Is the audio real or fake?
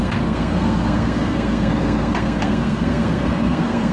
fake